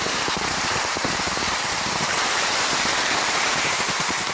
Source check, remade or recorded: remade